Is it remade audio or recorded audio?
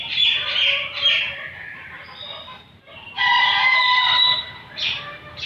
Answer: remade